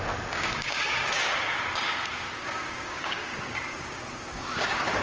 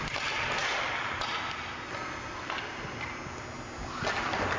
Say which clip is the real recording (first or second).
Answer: second